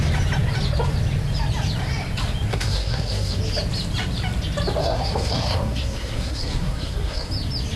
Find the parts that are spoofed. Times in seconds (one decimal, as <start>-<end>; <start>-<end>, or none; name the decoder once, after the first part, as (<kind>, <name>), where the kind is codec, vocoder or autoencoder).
2.5-3.4 (codec, SNAC); 4.8-7.3